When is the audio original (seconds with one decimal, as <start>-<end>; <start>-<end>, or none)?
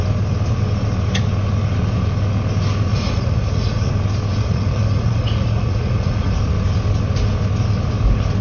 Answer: 0.0-2.9; 3.9-4.3; 6.4-8.4